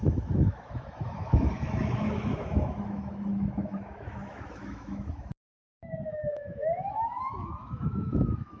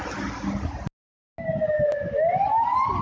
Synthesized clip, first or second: first